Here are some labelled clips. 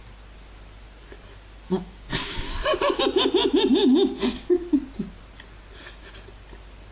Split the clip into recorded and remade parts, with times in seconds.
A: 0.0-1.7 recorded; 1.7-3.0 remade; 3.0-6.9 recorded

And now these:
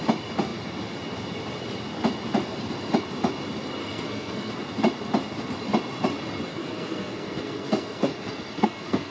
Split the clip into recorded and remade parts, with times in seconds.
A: 0.0-3.8 recorded; 3.8-4.5 remade; 4.5-6.5 recorded; 6.5-9.1 remade

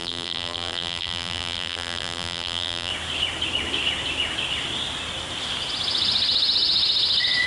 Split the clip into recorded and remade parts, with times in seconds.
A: 0.0-2.9 remade; 2.9-7.5 recorded

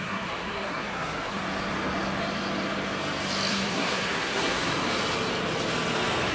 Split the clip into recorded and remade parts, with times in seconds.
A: 0.0-1.4 remade; 1.4-3.5 recorded; 3.5-4.7 remade; 4.7-6.3 recorded

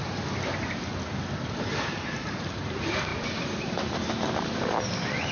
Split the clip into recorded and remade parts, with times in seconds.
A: 0.0-5.3 recorded